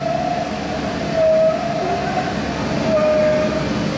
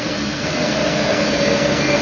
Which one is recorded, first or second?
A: first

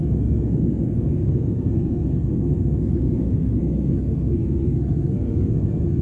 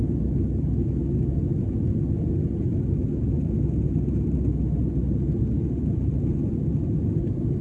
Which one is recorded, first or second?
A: second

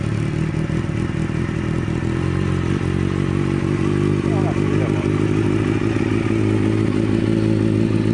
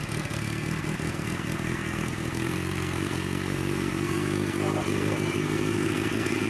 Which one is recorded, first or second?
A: first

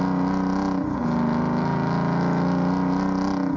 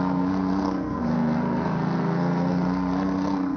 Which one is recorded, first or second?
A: first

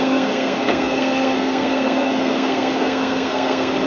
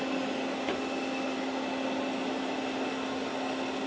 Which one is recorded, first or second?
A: second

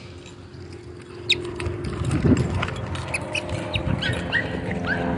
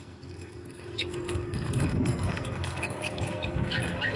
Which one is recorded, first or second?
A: first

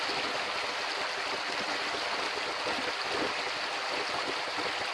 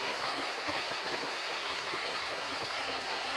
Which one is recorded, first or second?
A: first